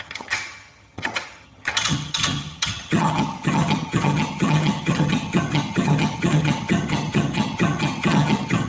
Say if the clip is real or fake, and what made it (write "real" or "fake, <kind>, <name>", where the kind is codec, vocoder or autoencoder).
fake, vocoder, HiFi-GAN